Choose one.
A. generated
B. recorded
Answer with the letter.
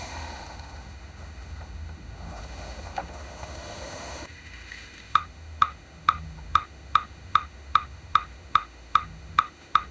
A